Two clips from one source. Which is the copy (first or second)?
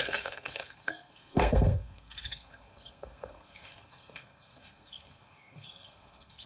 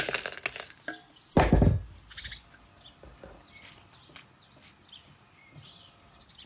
first